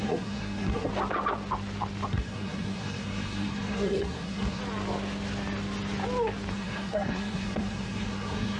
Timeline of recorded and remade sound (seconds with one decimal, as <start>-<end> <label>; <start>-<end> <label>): 0.0-0.9 remade; 0.9-2.1 recorded; 2.1-4.6 remade; 4.6-6.5 recorded; 6.5-8.6 remade